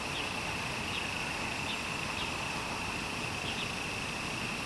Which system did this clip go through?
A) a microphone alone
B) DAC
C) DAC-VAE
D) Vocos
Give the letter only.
A